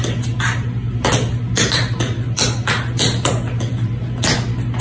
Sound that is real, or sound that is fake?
real